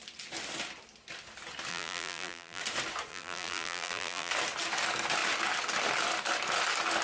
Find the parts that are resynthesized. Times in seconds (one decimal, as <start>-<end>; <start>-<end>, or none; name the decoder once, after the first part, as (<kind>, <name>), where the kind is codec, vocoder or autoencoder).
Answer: 1.7-2.6 (vocoder, BigVGAN v2); 3.1-4.3